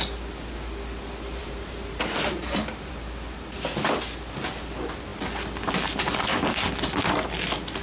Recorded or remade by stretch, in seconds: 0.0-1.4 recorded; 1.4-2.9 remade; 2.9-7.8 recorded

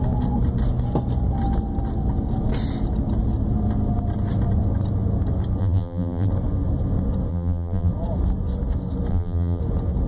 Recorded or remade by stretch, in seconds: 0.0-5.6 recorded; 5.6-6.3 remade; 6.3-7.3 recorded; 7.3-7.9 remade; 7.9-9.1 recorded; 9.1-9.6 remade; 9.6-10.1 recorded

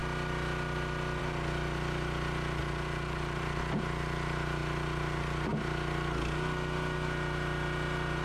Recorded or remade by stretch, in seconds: 0.0-2.6 recorded; 2.6-3.6 remade; 3.6-8.2 recorded

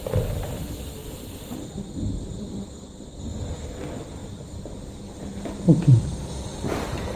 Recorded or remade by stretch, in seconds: 0.0-1.0 recorded; 1.0-2.7 remade; 2.7-4.2 recorded; 4.2-4.9 remade; 4.9-7.2 recorded

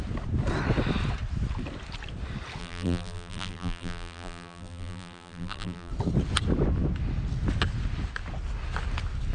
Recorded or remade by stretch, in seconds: 0.0-2.6 recorded; 2.6-5.9 remade; 5.9-9.3 recorded